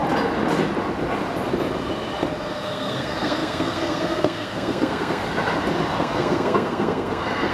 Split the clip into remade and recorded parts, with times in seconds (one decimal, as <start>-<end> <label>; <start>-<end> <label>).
0.0-2.5 recorded; 2.5-5.2 remade; 5.2-6.0 recorded; 6.0-7.5 remade